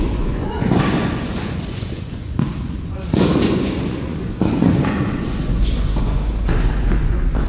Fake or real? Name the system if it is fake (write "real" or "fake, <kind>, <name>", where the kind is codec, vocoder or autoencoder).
fake, vocoder, Vocos